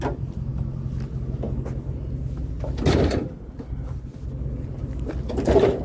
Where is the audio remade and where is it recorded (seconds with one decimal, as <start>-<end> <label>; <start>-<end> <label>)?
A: 0.0-5.8 recorded